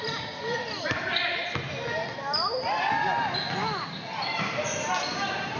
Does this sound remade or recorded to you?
recorded